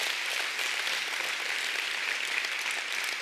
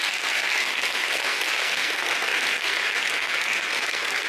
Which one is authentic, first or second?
first